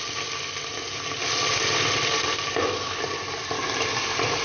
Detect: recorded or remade recorded